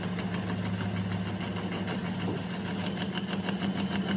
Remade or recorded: recorded